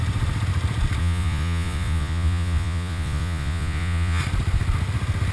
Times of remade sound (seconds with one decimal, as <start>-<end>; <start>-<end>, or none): 1.0-4.2